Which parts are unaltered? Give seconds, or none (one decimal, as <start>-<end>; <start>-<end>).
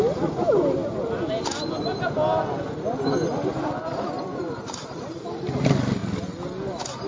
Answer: 0.0-7.1